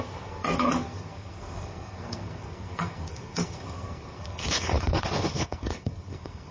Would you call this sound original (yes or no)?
no